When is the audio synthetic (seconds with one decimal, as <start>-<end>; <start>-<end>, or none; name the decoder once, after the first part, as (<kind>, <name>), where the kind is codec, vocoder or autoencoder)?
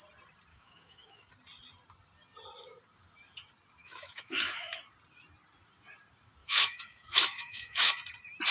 0.5-1.3 (autoencoder, DAC-VAE); 3.8-4.8; 6.4-7.9